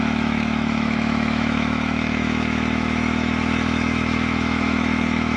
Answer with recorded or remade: remade